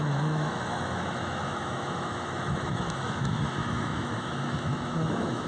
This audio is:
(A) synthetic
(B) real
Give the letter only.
A